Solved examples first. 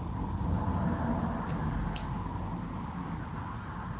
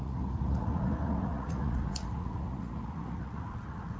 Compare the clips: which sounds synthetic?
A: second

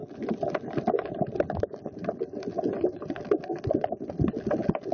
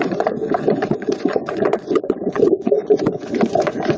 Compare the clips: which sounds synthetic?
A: second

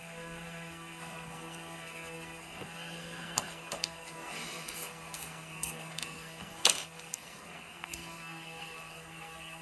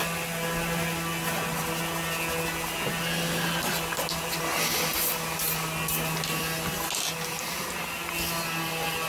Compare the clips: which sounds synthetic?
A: first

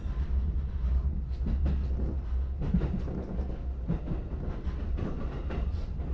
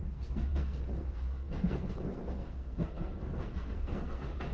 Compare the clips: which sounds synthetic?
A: second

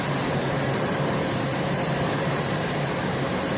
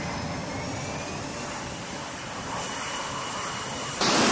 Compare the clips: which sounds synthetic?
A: first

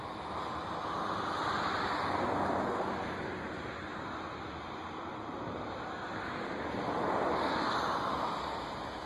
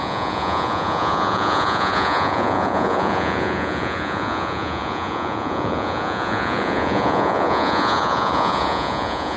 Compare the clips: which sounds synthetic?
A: second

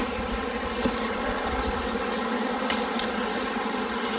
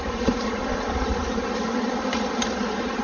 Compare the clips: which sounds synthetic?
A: second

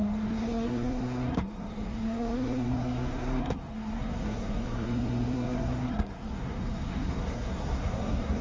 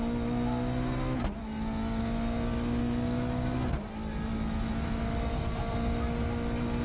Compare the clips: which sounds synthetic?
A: first